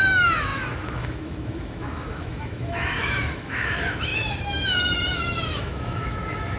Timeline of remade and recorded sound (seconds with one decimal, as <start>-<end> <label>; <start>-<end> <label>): 0.0-6.6 remade